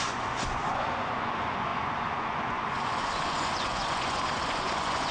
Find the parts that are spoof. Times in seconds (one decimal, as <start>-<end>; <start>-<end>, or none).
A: 0.0-5.1